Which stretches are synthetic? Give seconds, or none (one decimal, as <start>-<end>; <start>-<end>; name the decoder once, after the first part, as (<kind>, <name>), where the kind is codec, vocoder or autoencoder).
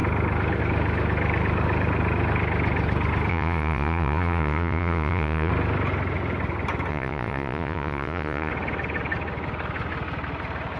3.3-5.5 (vocoder, Vocos); 6.9-8.5